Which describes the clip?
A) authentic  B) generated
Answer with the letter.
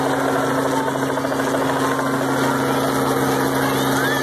A